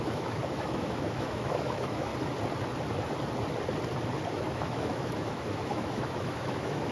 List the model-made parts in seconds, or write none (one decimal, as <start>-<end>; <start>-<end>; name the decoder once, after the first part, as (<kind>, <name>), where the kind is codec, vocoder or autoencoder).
0.0-2.1 (autoencoder, DAC-VAE); 4.3-6.9